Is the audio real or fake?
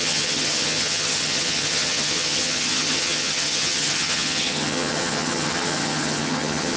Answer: fake